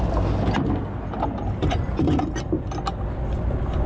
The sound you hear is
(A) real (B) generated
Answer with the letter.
A